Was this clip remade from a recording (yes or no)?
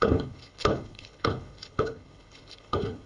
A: yes